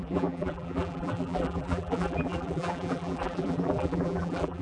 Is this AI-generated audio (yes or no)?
yes